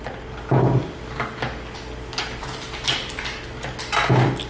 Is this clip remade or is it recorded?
recorded